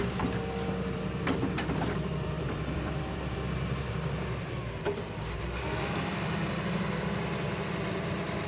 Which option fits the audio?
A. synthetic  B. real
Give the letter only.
A